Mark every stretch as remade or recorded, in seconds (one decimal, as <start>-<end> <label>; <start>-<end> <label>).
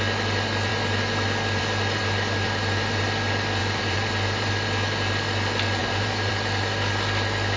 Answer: 0.0-2.0 recorded; 2.0-3.0 remade; 3.0-3.6 recorded; 3.6-4.5 remade; 4.5-5.8 recorded; 5.8-6.3 remade; 6.3-7.6 recorded